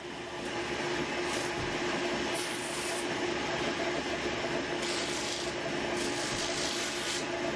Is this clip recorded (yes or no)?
yes